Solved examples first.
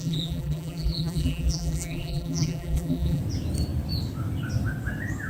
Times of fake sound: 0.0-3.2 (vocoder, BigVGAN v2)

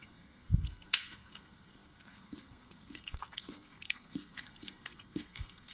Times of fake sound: 0.0-5.7 (codec, SNAC)

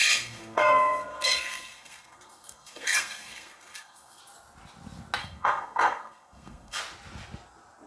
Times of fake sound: 0.0-4.2 (codec, SNAC); 5.2-6.8

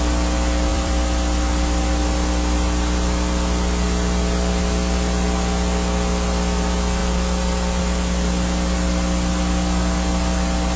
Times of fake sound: 0.7-4.6 (vocoder, BigVGAN v2)

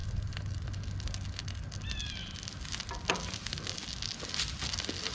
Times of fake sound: none